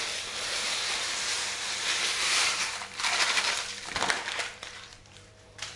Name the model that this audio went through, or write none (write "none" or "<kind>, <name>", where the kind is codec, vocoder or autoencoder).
vocoder, BigVGAN v2